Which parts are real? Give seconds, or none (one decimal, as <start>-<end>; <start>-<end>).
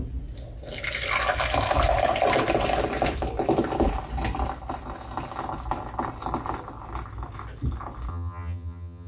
0.0-8.1